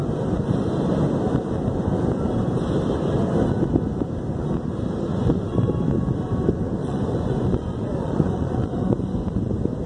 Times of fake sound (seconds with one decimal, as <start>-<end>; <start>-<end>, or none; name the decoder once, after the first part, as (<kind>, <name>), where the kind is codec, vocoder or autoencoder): 5.1-5.7 (vocoder, Vocos); 6.8-9.5